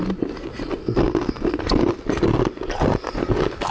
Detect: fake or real real